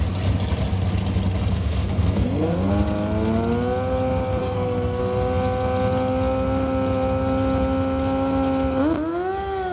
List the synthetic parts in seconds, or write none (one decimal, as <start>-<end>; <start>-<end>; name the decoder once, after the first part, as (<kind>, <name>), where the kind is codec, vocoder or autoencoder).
1.5-2.7 (codec, SNAC); 4.4-5.0